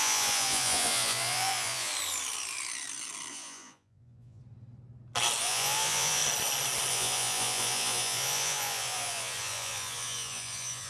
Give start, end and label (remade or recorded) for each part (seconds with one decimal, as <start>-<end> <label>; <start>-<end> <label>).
0.0-1.9 remade; 1.9-3.3 recorded; 3.3-4.4 remade; 4.4-5.4 recorded; 5.4-6.2 remade; 6.2-6.9 recorded; 6.9-10.9 remade